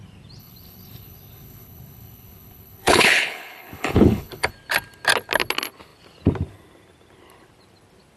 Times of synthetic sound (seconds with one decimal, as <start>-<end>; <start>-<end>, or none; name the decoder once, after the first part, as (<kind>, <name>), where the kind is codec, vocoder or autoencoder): 0.4-4.5 (codec, HILCodec)